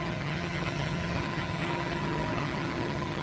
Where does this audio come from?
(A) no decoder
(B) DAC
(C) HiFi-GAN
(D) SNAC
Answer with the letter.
C